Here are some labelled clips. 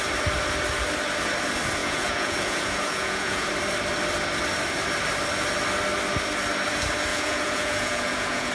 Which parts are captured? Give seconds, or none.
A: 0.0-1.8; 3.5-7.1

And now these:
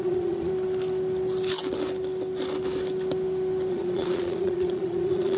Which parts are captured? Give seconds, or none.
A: 0.5-3.7

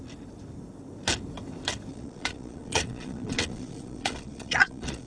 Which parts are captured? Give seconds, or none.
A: 0.0-1.9

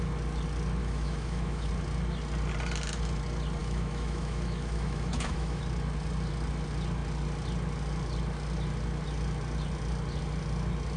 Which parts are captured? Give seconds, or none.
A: 0.0-0.8; 1.7-3.6; 5.6-11.0

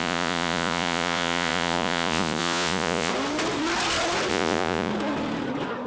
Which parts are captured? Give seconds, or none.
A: 3.1-4.3; 4.9-5.9

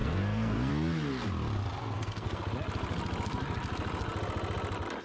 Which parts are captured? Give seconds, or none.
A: 0.7-1.8; 2.4-5.0